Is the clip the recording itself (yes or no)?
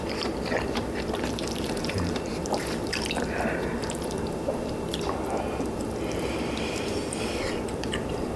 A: no